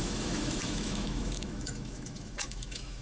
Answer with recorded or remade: remade